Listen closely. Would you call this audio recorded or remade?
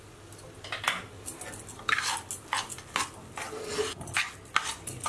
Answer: recorded